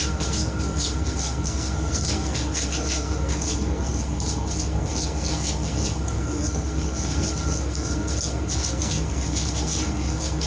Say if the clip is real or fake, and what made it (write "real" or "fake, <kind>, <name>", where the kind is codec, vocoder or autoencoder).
fake, codec, SNAC